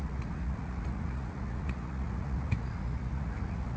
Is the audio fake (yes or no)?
yes